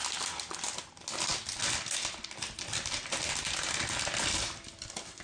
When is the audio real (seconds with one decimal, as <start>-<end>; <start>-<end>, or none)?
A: 0.0-5.2